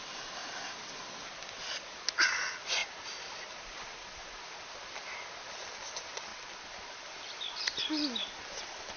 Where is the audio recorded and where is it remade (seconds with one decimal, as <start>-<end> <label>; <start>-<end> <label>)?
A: 0.0-9.0 recorded